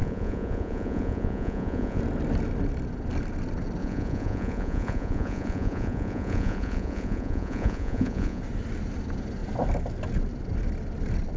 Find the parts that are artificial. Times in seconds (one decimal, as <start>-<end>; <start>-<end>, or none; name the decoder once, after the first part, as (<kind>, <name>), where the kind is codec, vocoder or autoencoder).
0.0-2.0 (vocoder, Vocos); 3.8-8.4